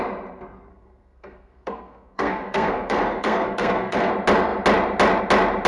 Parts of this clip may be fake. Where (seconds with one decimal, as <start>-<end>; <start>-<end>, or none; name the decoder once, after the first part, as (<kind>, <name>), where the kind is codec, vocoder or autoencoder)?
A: 0.7-4.1 (codec, SNAC)